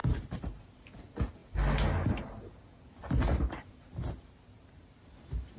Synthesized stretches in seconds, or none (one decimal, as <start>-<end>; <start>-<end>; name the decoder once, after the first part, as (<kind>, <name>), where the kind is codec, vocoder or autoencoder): 0.0-1.0 (vocoder, BigVGAN v2); 3.0-4.8